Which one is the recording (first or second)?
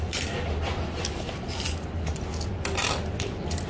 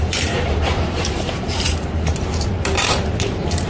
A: first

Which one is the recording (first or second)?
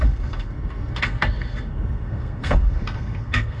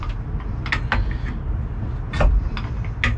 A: second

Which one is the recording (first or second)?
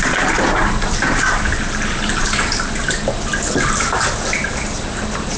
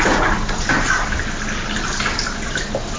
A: second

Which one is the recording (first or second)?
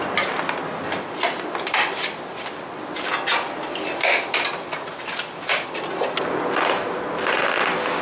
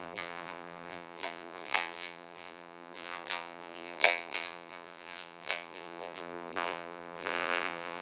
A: first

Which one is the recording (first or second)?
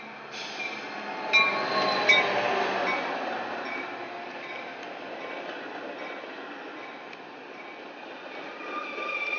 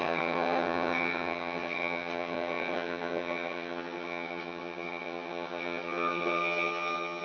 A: first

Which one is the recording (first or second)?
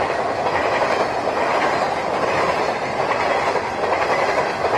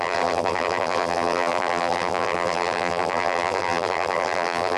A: first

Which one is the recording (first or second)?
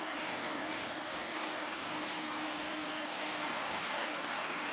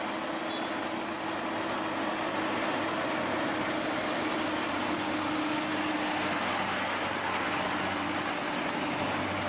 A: second